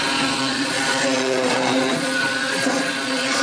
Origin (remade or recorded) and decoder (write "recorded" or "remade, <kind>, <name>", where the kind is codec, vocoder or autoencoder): remade, vocoder, Vocos